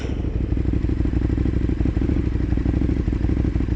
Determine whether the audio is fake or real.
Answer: real